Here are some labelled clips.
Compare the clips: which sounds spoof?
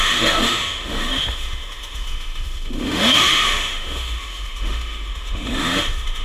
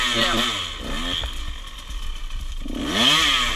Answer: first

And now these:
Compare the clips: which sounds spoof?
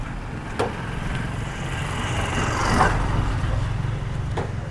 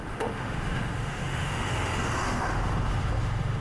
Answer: second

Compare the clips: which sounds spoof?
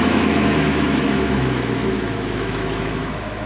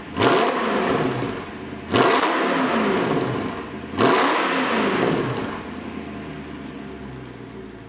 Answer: first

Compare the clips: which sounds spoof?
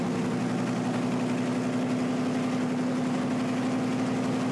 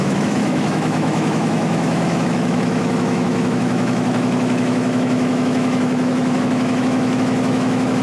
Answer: second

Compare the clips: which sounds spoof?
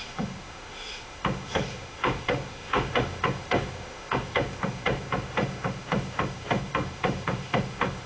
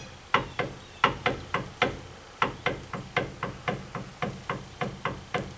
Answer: first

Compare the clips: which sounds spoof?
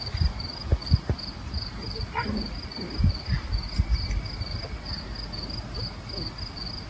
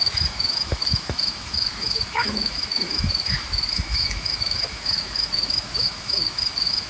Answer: second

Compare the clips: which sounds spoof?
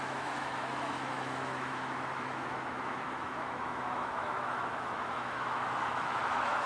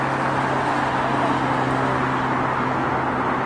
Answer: first